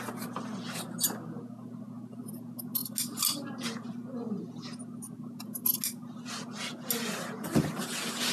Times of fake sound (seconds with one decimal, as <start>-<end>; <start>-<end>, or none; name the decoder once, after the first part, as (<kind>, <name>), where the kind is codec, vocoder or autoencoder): none